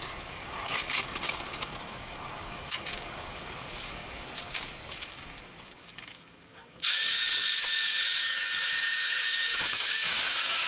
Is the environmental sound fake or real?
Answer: fake